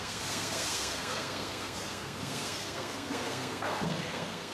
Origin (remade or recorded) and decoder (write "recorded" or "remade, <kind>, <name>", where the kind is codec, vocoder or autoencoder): remade, codec, SNAC